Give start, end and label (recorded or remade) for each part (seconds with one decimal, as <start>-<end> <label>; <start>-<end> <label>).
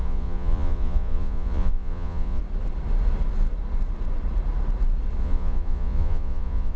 0.0-2.4 remade; 2.4-5.2 recorded; 5.2-6.8 remade